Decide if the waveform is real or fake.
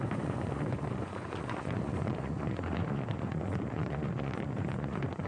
fake